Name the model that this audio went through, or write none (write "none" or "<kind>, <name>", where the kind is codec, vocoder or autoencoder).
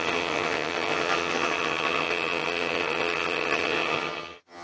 vocoder, HiFi-GAN